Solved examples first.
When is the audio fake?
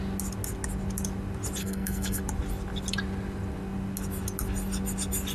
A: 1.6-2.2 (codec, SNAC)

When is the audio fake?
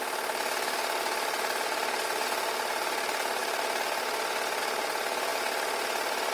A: none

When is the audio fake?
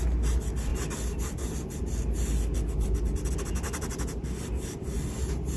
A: none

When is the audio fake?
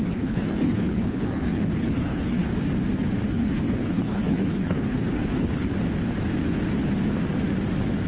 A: 0.0-2.5 (codec, HILCodec); 3.3-5.7